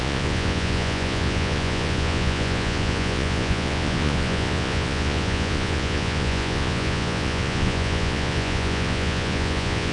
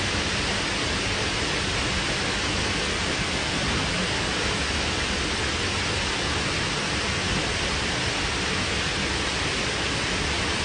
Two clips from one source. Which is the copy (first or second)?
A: first